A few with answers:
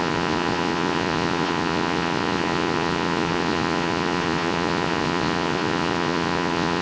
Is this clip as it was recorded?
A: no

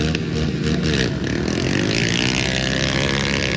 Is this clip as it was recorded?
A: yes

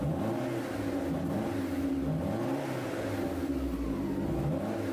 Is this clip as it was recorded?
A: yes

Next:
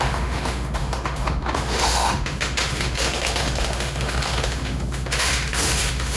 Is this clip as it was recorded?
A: no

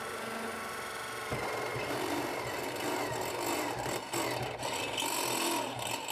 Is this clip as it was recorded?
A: yes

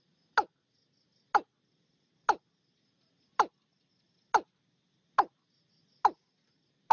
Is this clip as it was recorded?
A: yes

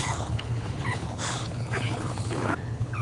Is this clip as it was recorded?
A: no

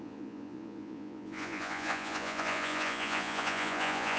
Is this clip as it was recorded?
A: no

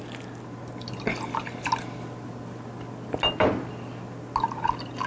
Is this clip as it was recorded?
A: yes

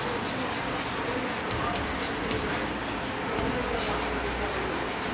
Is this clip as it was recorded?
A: yes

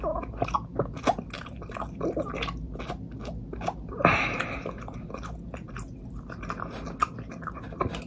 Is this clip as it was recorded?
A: yes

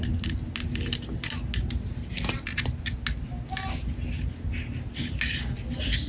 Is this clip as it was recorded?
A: yes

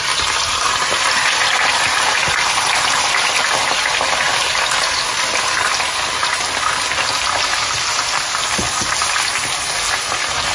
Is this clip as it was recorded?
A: yes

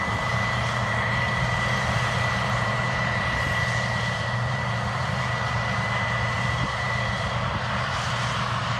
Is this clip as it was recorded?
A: no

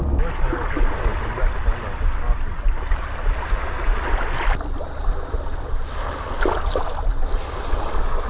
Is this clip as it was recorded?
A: yes